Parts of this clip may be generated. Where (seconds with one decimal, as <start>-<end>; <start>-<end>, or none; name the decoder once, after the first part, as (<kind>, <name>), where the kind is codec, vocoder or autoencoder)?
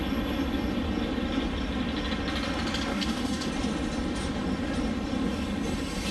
2.9-3.5 (codec, DAC)